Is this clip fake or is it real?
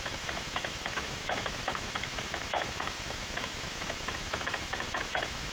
fake